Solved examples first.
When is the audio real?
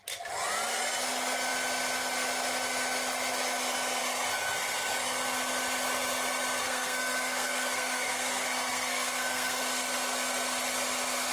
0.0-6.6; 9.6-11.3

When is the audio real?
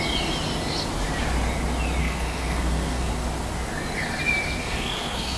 0.0-2.0; 3.1-4.6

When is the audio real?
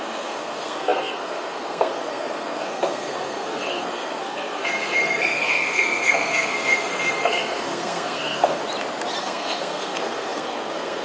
8.6-9.2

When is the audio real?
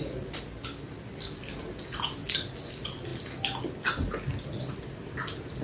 0.0-5.6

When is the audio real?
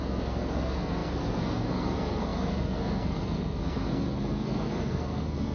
none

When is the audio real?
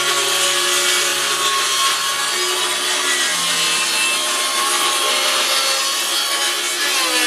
0.0-7.3